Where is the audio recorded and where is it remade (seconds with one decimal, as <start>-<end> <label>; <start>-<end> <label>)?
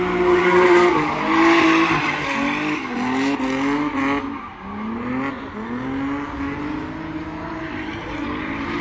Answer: 0.0-0.4 recorded; 0.4-1.2 remade; 1.2-8.8 recorded